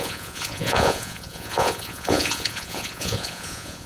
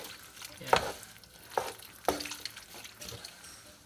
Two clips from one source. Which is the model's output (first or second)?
first